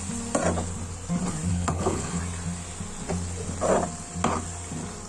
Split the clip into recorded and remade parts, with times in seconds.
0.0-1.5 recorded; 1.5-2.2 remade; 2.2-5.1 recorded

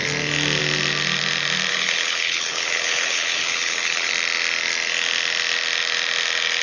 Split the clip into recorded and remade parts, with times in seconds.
0.0-1.7 recorded; 1.7-4.1 remade; 4.1-6.6 recorded

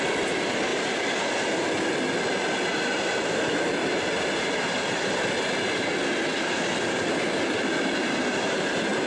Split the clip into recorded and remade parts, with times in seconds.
0.0-9.1 recorded

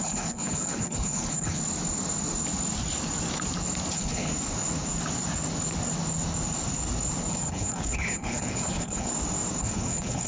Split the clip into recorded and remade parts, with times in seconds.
0.0-1.6 remade; 1.6-3.9 recorded; 3.9-4.3 remade; 4.3-7.3 recorded; 7.3-9.1 remade; 9.1-9.6 recorded; 9.6-10.3 remade

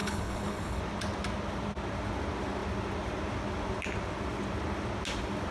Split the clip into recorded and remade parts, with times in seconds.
0.0-0.8 remade; 0.8-5.5 recorded

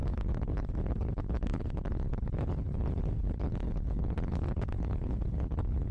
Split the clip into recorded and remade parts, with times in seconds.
0.0-5.9 remade